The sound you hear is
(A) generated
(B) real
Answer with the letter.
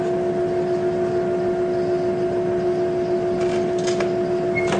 B